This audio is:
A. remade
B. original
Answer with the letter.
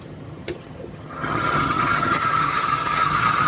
A